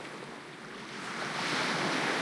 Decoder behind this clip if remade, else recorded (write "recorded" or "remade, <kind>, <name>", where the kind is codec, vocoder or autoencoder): recorded